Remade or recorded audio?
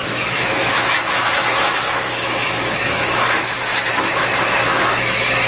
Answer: remade